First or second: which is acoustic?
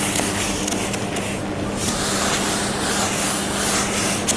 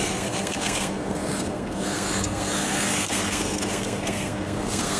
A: first